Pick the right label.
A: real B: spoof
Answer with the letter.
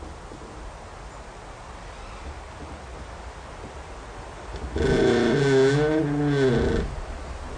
A